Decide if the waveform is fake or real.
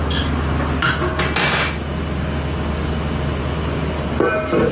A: real